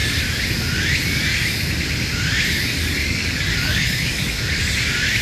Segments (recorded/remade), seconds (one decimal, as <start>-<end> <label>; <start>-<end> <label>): 0.0-3.0 recorded; 3.0-4.6 remade; 4.6-5.2 recorded

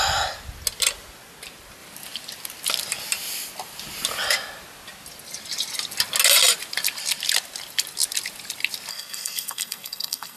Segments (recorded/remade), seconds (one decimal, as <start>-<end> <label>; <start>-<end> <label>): 0.0-8.9 recorded; 8.9-10.4 remade

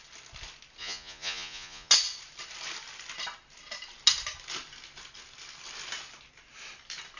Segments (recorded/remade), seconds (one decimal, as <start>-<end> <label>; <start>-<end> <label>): 0.0-0.8 recorded; 0.8-1.9 remade; 1.9-7.2 recorded

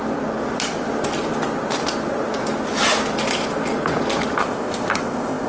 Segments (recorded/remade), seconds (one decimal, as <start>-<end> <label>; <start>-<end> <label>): 0.0-4.4 recorded; 4.4-5.5 remade

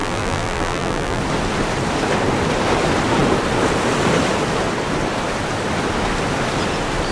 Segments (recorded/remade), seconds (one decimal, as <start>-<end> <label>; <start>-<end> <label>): 0.0-1.2 remade; 1.2-7.1 recorded

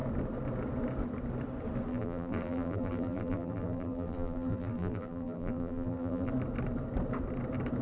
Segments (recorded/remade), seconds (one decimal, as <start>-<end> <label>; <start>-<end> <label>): 0.0-1.9 recorded; 1.9-6.3 remade; 6.3-7.8 recorded